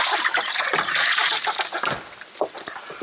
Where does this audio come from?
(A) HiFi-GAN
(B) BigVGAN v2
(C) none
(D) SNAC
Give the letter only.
C